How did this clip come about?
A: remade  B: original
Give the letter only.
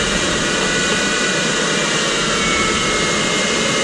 A